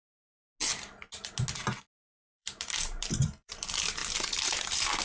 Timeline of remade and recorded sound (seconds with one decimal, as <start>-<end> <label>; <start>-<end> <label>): 0.0-2.3 recorded; 2.3-3.5 remade; 3.5-4.0 recorded; 4.0-5.0 remade